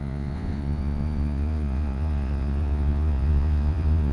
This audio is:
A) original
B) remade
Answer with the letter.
B